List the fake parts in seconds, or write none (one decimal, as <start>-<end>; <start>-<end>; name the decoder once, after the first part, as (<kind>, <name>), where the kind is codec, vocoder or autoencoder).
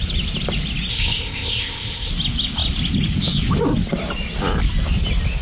0.9-2.1 (codec, ZipCodec)